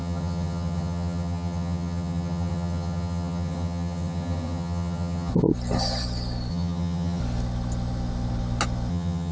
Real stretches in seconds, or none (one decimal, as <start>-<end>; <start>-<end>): 5.3-6.5; 7.2-8.9